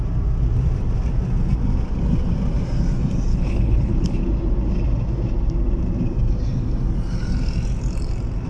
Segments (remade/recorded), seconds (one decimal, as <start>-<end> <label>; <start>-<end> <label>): 0.0-3.3 recorded; 3.3-4.2 remade; 4.2-8.5 recorded